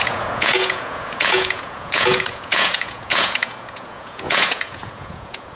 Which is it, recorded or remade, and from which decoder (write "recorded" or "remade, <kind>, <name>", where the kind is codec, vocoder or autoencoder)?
remade, vocoder, Vocos